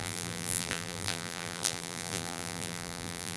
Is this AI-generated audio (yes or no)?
yes